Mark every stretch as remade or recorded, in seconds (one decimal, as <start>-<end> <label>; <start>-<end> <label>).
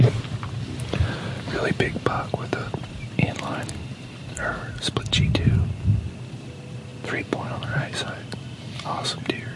0.0-4.4 remade; 4.4-5.8 recorded; 5.8-6.9 remade; 6.9-9.2 recorded; 9.2-9.6 remade